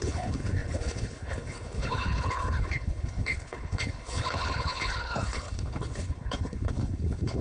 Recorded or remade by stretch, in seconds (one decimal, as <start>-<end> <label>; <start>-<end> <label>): 0.0-7.4 remade